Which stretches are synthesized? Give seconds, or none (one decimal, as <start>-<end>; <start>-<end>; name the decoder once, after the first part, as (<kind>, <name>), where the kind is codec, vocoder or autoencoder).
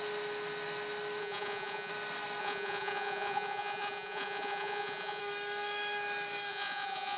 1.2-1.9 (vocoder, Vocos); 2.4-5.2; 6.5-7.2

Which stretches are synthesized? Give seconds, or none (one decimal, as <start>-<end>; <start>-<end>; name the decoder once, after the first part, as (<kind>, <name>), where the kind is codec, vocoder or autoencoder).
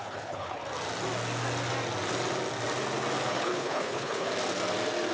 0.0-0.6 (codec, HILCodec); 3.3-4.3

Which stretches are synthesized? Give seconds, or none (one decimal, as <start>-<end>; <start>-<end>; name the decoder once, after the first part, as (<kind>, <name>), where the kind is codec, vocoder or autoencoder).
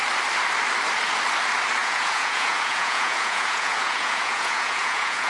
1.8-5.3 (vocoder, Vocos)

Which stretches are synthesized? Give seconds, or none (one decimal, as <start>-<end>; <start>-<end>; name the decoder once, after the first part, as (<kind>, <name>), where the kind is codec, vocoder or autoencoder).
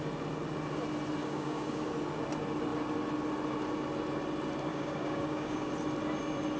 1.2-1.8 (codec, DAC); 4.7-5.7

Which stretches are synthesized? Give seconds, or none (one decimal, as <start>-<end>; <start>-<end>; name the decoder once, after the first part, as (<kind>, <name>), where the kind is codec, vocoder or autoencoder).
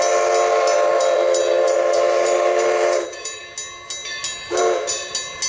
0.9-3.4 (vocoder, BigVGAN v2)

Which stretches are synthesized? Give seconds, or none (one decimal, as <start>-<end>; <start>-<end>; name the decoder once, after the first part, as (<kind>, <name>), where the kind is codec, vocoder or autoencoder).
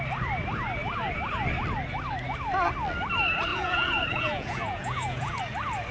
3.5-5.4 (vocoder, Vocos)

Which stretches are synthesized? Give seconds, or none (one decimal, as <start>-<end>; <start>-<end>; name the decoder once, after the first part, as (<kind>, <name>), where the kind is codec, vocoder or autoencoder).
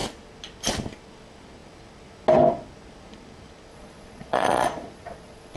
3.7-5.6 (vocoder, Vocos)